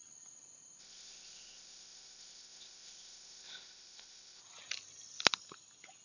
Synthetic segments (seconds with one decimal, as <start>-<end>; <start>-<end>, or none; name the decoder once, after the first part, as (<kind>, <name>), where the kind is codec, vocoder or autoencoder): 0.8-4.4 (codec, ZipCodec)